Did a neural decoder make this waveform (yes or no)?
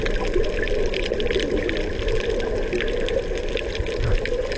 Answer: no